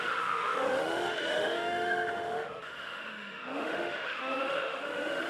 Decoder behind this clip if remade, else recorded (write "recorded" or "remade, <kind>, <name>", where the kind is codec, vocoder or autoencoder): remade, autoencoder, DAC-VAE